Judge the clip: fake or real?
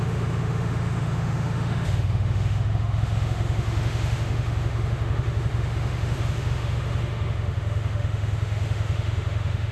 fake